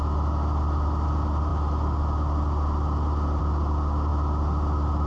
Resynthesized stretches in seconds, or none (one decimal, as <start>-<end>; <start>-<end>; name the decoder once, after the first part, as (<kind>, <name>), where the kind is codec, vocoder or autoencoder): none